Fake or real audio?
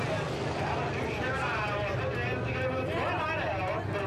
real